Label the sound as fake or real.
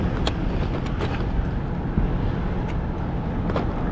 real